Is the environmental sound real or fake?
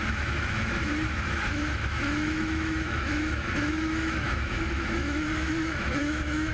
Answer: fake